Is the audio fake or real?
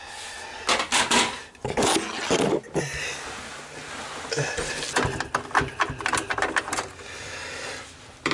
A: real